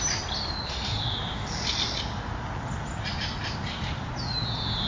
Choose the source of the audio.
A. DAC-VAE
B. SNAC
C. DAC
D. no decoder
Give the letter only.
D